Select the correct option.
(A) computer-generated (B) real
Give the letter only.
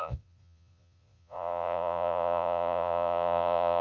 A